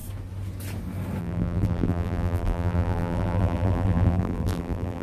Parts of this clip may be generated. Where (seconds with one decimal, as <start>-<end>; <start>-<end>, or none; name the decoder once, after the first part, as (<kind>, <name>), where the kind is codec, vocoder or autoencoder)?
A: 1.2-5.0 (vocoder, BigVGAN v2)